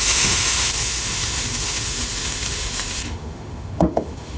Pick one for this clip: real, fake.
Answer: fake